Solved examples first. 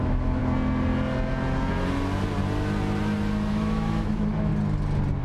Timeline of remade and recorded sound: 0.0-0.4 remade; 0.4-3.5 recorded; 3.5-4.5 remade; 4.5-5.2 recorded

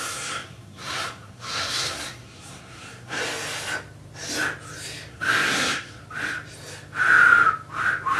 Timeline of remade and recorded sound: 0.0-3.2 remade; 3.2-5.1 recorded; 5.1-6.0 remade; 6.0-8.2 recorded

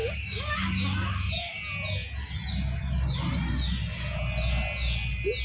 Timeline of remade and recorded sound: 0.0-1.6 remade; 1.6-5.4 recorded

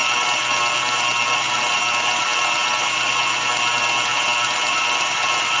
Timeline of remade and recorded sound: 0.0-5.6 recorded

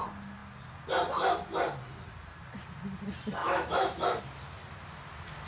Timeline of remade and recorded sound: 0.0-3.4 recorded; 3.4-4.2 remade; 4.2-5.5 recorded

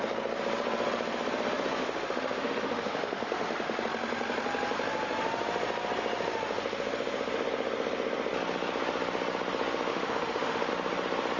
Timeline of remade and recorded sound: 0.0-1.8 recorded; 1.8-3.8 remade; 3.8-9.9 recorded; 9.9-10.7 remade; 10.7-11.4 recorded